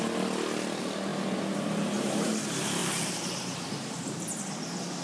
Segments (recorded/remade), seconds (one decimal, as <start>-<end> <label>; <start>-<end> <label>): 0.0-2.8 recorded; 2.8-3.7 remade; 3.7-5.0 recorded